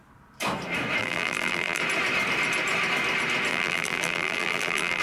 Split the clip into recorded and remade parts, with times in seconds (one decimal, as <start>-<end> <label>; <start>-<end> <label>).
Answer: 0.0-1.0 recorded; 1.0-1.8 remade; 1.8-3.5 recorded; 3.5-5.0 remade